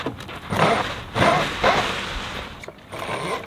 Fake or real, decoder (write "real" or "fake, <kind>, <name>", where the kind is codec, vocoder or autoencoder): real